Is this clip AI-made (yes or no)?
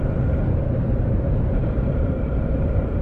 no